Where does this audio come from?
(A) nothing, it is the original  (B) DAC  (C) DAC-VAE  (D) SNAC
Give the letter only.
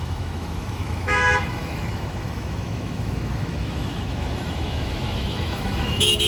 C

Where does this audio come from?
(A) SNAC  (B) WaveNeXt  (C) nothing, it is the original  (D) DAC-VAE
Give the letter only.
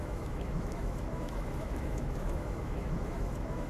D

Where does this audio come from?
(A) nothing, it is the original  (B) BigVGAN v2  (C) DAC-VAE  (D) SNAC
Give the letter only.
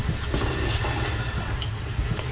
A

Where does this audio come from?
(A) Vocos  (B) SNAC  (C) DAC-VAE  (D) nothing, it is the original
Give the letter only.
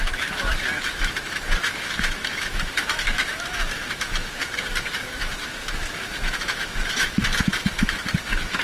C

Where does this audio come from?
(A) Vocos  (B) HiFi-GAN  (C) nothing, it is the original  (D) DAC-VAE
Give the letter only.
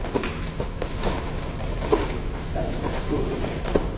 D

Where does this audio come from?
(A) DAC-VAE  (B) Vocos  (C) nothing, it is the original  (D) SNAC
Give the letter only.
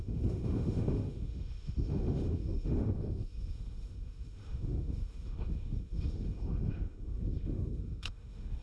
A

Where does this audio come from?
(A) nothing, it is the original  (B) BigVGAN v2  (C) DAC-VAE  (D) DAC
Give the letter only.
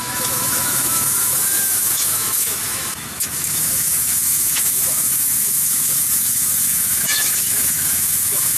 C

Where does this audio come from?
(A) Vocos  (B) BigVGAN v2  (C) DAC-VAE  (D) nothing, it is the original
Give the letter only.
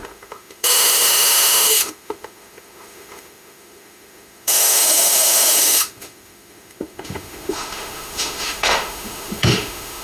C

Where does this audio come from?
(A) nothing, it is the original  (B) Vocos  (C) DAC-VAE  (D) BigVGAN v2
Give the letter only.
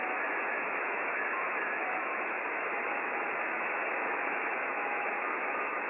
C